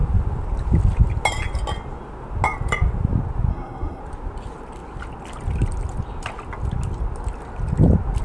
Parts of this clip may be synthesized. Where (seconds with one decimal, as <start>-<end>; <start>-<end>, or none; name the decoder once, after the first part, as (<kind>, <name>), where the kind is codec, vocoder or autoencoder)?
3.5-4.0 (codec, SNAC)